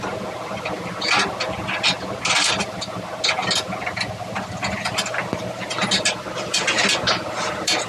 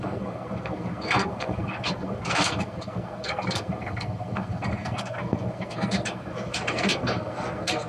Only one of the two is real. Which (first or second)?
first